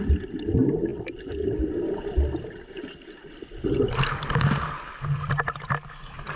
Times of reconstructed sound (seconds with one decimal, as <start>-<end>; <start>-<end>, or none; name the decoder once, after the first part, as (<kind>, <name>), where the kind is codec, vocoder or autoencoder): none